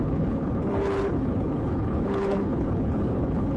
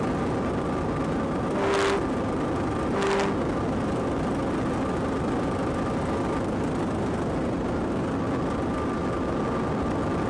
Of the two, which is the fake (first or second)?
first